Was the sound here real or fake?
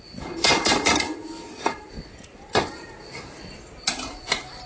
real